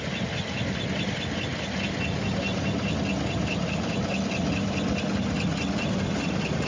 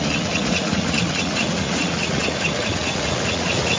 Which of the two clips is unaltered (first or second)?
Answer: first